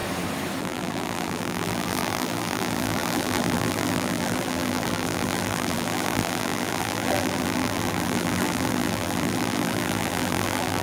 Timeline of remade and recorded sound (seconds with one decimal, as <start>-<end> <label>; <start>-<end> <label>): 0.0-0.6 recorded; 0.6-10.8 remade